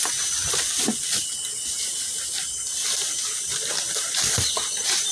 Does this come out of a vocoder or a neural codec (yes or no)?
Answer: no